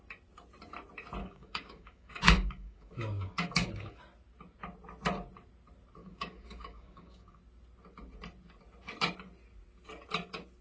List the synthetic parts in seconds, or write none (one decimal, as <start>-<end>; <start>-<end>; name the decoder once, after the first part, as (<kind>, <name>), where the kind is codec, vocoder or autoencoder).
1.2-4.0 (codec, DAC); 6.0-7.4